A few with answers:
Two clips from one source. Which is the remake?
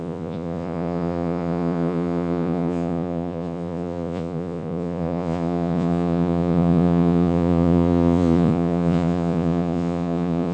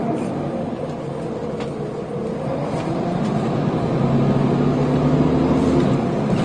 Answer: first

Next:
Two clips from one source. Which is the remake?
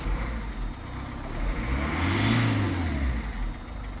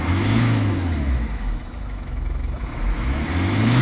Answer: second